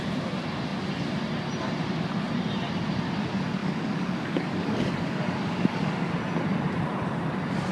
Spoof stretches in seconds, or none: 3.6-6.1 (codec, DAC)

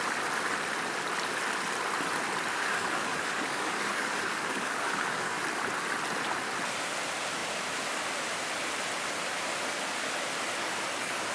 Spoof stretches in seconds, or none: 2.5-5.4 (codec, DAC); 10.6-11.3

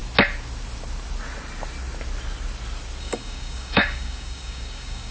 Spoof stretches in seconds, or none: 3.0-5.1 (codec, DAC)

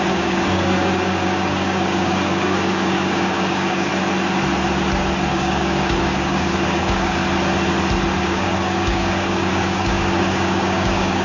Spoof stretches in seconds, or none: 0.0-3.9 (codec, DAC); 5.3-7.2; 8.2-11.2

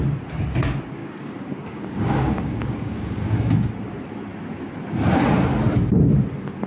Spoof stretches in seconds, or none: 1.0-3.7 (codec, DAC)

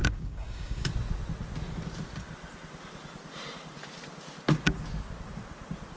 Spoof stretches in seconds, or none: 0.0-0.9 (codec, DAC)

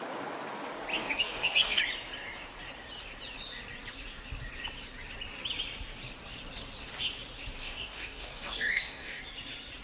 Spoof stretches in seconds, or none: 0.9-1.8 (codec, DAC); 7.6-9.2

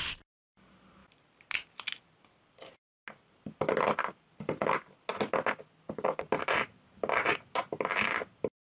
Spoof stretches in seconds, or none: none